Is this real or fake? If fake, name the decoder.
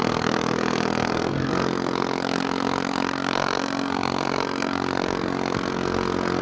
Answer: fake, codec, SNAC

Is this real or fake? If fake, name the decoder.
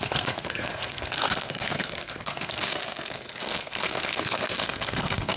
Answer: fake, codec, SNAC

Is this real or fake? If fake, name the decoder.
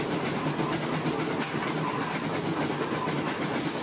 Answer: real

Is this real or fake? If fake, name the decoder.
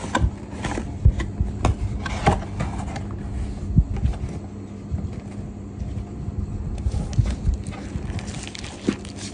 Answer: real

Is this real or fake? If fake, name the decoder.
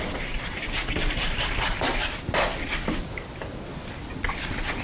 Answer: real